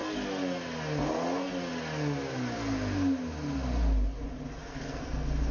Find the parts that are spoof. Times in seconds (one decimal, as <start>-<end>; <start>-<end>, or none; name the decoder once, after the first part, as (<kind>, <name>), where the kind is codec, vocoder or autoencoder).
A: 4.6-5.5 (codec, SNAC)